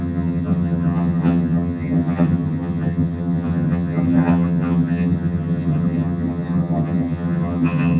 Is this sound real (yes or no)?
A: no